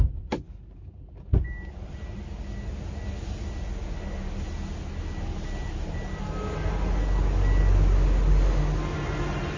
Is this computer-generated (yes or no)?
no